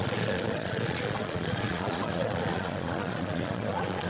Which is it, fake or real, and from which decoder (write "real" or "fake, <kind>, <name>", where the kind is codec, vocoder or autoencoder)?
fake, vocoder, Vocos